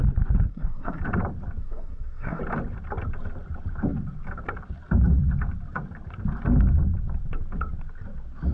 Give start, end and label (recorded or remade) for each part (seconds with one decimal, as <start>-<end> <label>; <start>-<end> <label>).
0.0-0.5 recorded; 0.5-1.0 remade; 1.0-1.6 recorded; 1.6-2.4 remade; 2.4-8.5 recorded